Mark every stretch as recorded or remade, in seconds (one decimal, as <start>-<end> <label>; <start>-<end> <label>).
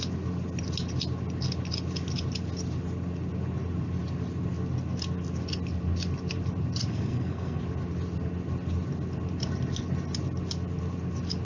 0.0-6.9 recorded; 6.9-7.6 remade; 7.6-11.4 recorded